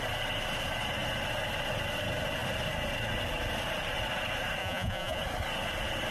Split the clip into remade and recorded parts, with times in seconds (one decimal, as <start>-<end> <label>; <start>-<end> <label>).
0.0-4.6 recorded; 4.6-5.2 remade; 5.2-6.1 recorded

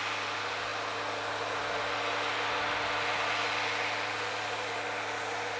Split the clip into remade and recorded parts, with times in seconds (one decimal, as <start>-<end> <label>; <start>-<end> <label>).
0.0-5.6 recorded

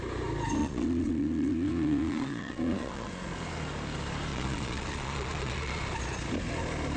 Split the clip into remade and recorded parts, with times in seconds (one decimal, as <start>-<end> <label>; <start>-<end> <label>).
0.0-0.6 recorded; 0.6-3.1 remade; 3.1-4.3 recorded; 4.3-5.8 remade; 5.8-7.0 recorded

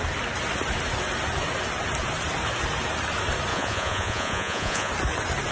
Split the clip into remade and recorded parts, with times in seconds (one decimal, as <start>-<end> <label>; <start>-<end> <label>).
0.0-3.5 recorded; 3.5-4.9 remade; 4.9-5.5 recorded

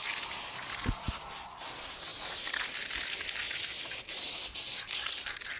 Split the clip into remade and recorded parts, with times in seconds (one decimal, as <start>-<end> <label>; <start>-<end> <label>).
0.0-5.6 recorded

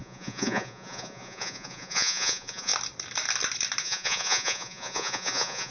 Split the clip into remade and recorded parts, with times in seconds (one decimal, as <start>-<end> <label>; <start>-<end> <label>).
0.0-2.7 remade; 2.7-3.8 recorded; 3.8-5.7 remade